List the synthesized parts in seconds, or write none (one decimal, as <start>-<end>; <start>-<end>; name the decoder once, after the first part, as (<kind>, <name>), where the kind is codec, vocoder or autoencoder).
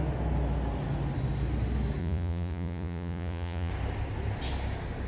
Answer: 2.0-3.7 (vocoder, Vocos)